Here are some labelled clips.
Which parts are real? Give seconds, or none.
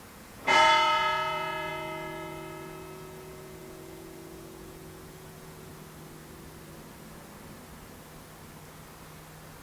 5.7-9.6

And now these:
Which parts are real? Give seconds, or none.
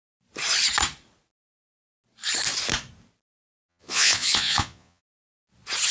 0.0-3.7; 5.0-5.9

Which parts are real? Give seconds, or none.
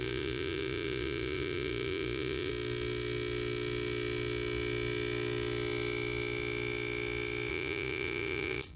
2.5-7.5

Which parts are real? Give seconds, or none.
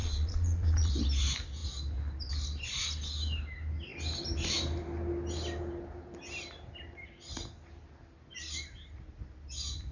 0.9-9.9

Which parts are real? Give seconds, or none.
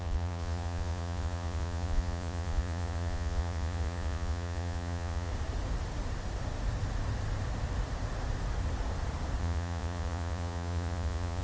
5.3-9.4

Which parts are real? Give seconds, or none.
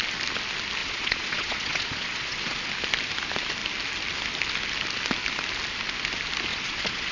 0.0-0.8; 2.7-6.5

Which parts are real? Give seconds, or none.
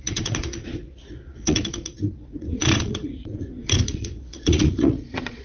none